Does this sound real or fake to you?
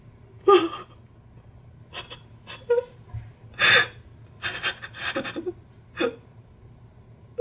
real